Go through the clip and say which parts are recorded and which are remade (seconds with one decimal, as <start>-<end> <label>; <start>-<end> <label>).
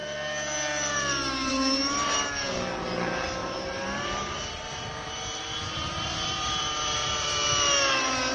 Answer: 0.0-3.4 recorded; 3.4-7.9 remade; 7.9-8.3 recorded